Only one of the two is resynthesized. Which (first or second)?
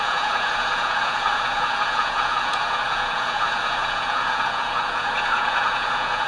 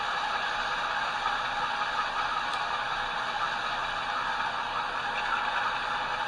first